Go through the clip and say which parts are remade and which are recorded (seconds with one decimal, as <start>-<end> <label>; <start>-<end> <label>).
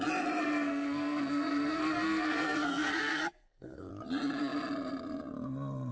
0.0-0.4 recorded; 0.4-3.9 remade; 3.9-5.9 recorded